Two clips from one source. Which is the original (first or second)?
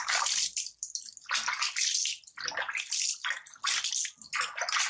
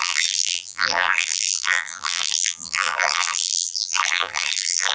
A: first